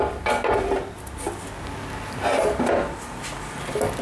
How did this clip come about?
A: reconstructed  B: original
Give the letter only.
B